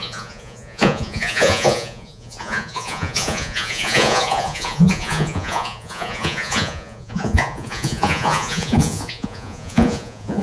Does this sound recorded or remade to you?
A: remade